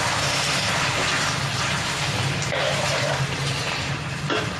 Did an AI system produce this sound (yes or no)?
yes